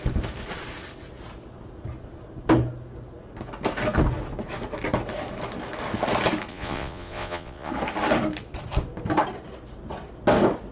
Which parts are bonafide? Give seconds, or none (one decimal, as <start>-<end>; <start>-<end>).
0.0-6.5; 7.7-10.7

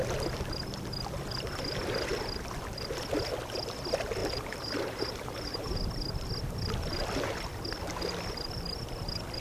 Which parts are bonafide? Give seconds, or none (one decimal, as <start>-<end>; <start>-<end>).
0.0-4.2; 5.7-9.4

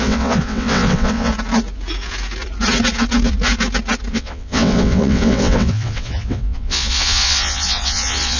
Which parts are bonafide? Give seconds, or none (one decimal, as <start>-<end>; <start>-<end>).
1.3-4.1

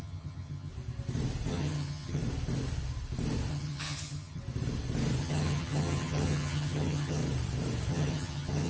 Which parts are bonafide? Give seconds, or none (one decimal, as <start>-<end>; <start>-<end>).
0.7-1.5; 2.2-3.5; 4.4-5.2; 7.2-7.9

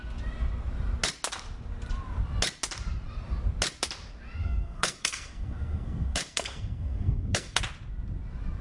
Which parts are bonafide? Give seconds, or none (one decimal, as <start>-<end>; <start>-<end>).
0.0-4.4; 7.6-8.6

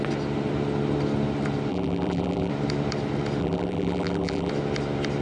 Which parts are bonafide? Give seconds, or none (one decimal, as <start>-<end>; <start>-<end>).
0.0-1.7; 2.5-3.4; 4.5-5.2

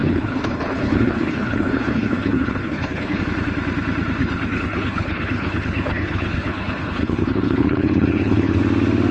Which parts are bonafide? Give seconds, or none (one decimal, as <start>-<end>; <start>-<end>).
3.2-4.2; 8.6-9.1